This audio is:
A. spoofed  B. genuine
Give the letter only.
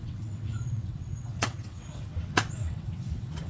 A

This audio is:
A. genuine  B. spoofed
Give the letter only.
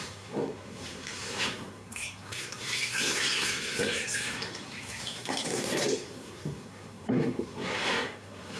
B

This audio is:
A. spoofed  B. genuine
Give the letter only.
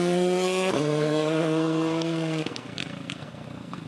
A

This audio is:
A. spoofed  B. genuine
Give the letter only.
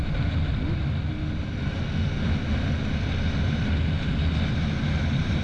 B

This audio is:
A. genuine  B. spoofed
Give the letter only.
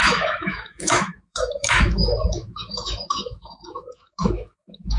B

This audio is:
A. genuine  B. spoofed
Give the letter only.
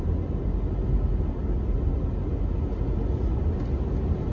A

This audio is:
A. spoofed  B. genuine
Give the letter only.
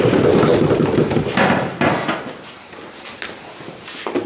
B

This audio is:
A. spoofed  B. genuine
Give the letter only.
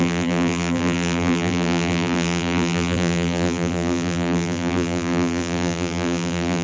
A